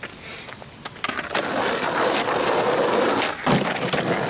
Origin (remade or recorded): recorded